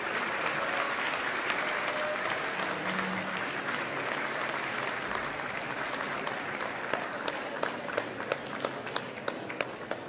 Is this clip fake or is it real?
real